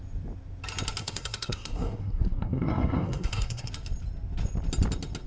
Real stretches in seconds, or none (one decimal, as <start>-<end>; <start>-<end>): 0.0-1.0; 3.7-5.3